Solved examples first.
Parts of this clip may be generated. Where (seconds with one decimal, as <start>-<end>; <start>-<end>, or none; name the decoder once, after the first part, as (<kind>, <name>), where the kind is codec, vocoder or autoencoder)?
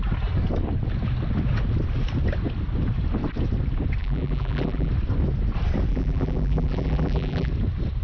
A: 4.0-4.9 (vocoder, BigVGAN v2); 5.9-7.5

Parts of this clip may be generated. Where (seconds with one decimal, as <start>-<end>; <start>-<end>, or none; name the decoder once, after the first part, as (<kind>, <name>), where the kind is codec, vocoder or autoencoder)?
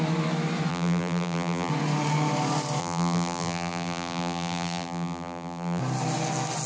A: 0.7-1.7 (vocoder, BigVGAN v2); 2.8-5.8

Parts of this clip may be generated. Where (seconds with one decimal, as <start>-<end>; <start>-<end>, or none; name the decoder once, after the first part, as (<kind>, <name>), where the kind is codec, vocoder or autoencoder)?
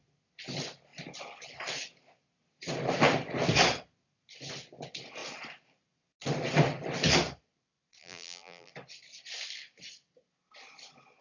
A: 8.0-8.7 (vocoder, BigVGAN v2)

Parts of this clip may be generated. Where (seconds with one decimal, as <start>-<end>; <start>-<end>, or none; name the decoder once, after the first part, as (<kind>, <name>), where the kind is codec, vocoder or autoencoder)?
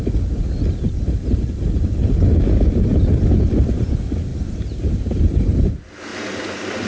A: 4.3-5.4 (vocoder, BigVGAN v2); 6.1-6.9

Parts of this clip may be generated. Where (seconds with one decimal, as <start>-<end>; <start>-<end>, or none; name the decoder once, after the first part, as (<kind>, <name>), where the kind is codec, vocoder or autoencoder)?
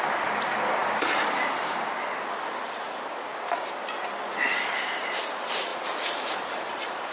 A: 5.7-7.1 (vocoder, BigVGAN v2)